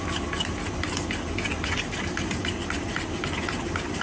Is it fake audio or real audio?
real